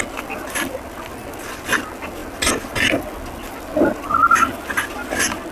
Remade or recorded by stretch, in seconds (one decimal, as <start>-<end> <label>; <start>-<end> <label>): 0.0-5.5 recorded